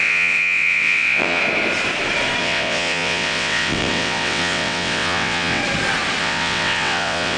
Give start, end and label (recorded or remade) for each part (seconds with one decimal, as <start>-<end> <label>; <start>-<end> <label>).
0.0-1.4 remade; 1.4-2.4 recorded; 2.4-5.6 remade; 5.6-6.2 recorded; 6.2-7.4 remade